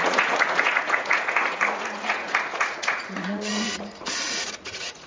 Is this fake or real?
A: fake